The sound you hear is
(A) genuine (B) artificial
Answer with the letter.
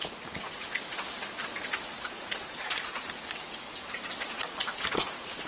A